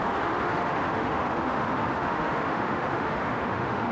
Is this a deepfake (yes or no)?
yes